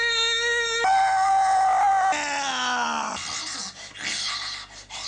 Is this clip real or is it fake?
real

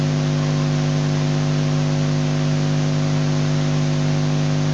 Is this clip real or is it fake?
real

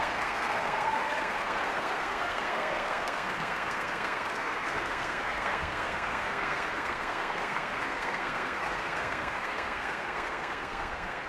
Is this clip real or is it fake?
fake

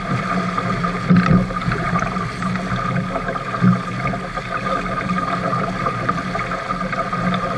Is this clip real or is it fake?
real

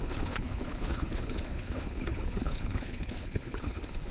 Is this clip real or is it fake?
fake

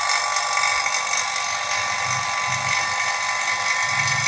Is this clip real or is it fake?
real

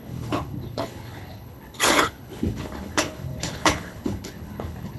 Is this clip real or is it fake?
fake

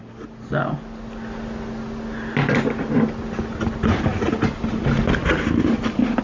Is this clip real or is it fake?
real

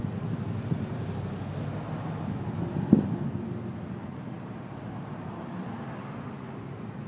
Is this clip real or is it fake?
real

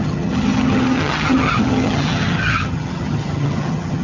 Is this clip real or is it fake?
fake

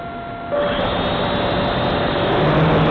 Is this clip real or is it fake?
real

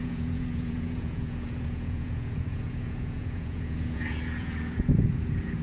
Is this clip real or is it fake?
fake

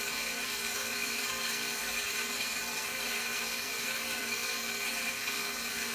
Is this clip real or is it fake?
fake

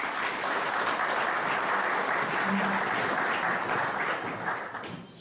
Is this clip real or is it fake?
real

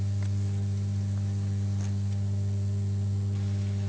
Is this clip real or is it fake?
real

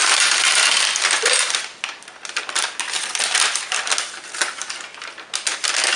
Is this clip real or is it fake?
real